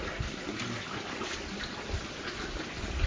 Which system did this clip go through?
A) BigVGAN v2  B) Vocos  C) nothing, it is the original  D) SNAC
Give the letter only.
C